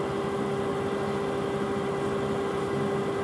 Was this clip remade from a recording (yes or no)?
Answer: no